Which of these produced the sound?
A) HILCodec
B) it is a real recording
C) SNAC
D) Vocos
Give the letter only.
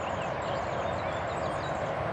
B